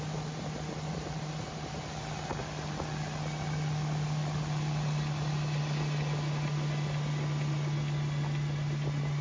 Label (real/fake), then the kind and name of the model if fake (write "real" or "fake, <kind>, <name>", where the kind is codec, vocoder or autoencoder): real